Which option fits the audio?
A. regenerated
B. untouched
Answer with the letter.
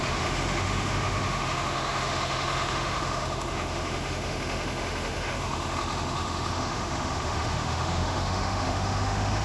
A